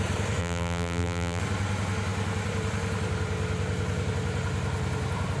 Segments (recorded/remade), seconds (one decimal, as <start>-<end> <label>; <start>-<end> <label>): 0.0-0.4 recorded; 0.4-1.4 remade; 1.4-5.4 recorded